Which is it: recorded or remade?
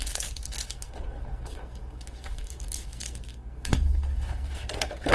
remade